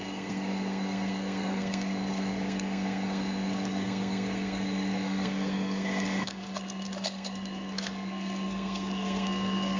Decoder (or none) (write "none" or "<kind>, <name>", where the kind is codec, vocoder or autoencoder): codec, SNAC